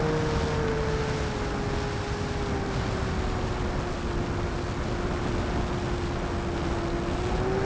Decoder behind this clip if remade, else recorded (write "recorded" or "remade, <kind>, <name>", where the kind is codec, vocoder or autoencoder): recorded